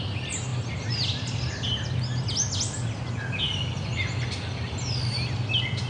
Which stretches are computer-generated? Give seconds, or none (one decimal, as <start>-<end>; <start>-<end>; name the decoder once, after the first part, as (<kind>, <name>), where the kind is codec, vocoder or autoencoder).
none